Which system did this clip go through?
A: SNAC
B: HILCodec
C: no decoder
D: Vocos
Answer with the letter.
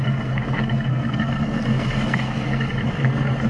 A